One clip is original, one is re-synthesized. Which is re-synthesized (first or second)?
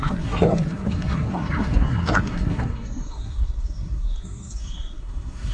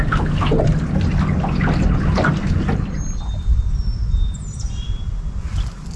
first